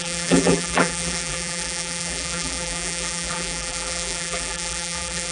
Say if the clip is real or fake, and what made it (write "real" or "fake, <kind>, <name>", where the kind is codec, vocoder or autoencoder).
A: fake, vocoder, BigVGAN v2